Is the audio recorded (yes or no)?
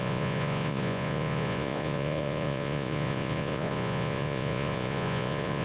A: no